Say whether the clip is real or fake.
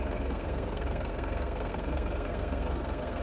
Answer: fake